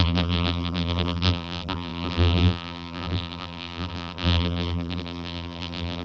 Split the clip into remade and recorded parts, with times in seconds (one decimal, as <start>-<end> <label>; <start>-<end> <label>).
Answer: 0.0-6.0 remade

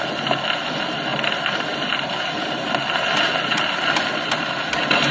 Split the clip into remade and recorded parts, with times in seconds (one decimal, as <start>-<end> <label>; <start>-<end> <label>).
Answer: 0.0-5.1 recorded

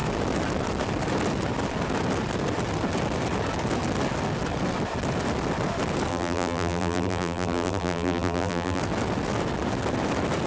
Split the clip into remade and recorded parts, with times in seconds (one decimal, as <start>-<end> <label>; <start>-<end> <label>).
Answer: 0.0-6.1 recorded; 6.1-8.8 remade; 8.8-10.5 recorded

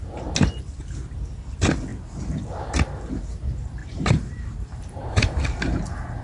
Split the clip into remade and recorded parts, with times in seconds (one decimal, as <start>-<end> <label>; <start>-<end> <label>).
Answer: 0.0-1.9 recorded; 1.9-2.4 remade; 2.4-3.8 recorded; 3.8-5.4 remade; 5.4-6.2 recorded